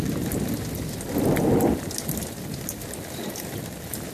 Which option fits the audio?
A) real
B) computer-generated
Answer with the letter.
A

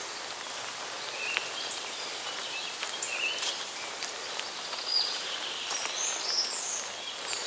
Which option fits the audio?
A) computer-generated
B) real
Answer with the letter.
A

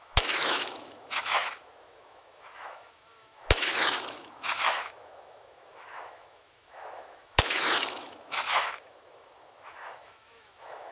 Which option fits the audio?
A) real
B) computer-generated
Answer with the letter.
B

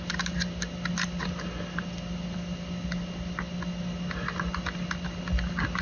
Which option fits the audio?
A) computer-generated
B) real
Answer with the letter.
B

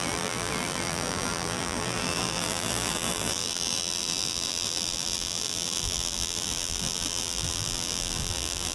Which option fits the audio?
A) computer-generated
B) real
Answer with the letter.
A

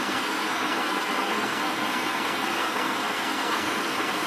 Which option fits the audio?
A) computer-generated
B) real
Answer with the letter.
A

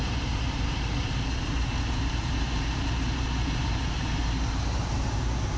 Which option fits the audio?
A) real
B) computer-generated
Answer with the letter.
B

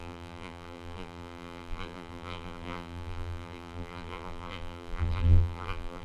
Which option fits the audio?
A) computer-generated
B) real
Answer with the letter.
A